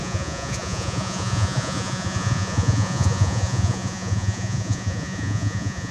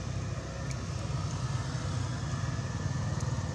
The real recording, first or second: second